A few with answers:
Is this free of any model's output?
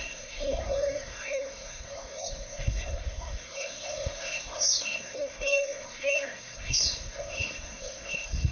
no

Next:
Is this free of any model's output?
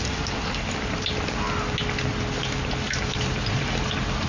yes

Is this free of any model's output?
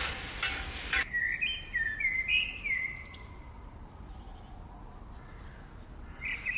yes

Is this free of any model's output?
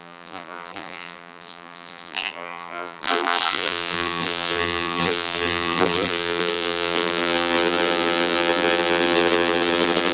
no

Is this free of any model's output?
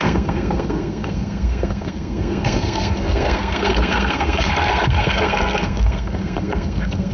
no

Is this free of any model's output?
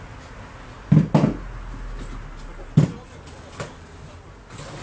yes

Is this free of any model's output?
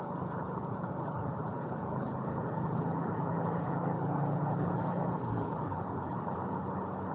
no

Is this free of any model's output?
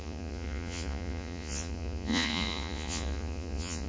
no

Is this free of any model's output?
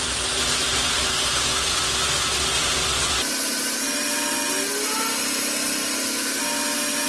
yes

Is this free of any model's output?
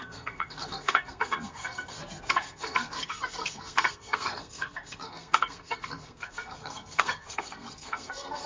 no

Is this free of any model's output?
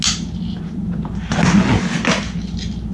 yes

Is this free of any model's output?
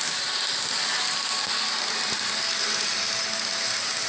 yes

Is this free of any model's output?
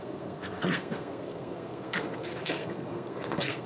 no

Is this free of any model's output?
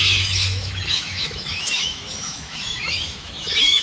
no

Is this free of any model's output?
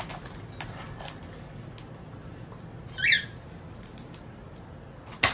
yes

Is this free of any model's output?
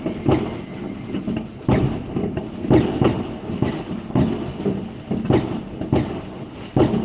yes